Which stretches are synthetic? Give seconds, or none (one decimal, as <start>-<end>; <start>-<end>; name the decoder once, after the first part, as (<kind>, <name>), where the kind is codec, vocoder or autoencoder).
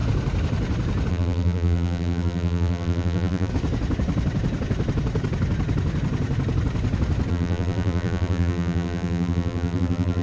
1.1-3.5 (vocoder, BigVGAN v2); 7.3-10.2